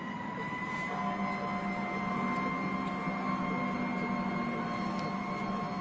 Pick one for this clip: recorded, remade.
recorded